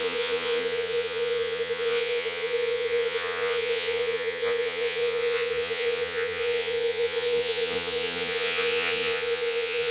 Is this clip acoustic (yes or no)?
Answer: no